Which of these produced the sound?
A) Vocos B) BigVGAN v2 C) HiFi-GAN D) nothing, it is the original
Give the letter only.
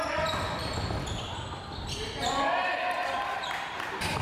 B